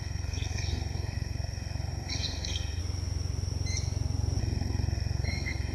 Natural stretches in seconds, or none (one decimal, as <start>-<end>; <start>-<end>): 2.8-4.4